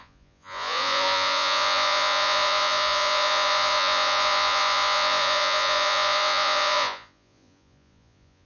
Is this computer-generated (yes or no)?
yes